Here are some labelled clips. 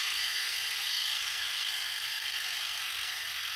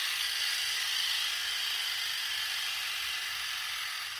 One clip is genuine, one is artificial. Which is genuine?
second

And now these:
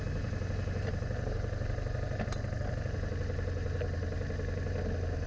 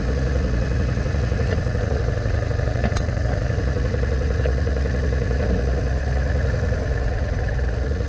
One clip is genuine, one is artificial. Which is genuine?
first